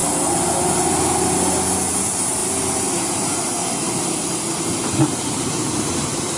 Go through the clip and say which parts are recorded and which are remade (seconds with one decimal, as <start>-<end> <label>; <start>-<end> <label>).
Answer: 0.0-2.0 recorded; 2.0-2.4 remade; 2.4-2.9 recorded; 2.9-3.4 remade; 3.4-4.9 recorded; 4.9-6.4 remade